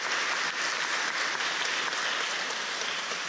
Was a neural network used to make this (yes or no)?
no